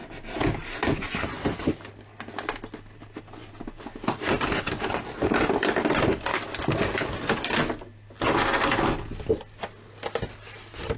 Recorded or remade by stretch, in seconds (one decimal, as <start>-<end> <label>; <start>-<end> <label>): 0.0-11.0 recorded